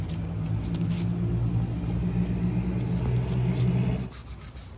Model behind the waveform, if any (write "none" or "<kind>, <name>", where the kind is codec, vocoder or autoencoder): none